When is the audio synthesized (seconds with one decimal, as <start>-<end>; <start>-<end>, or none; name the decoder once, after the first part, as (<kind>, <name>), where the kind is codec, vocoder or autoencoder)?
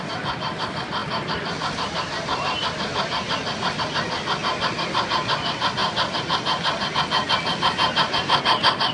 1.0-3.8 (vocoder, BigVGAN v2); 5.8-6.9